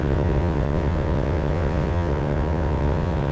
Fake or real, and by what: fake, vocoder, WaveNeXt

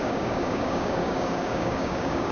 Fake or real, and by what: fake, codec, DAC